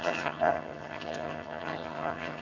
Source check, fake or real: fake